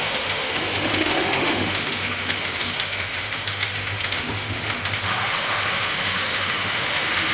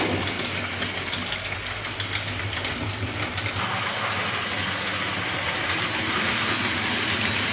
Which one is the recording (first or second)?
second